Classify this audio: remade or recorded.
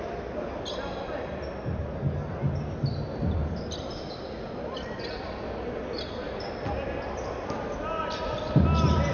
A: recorded